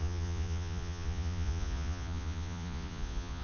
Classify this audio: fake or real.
fake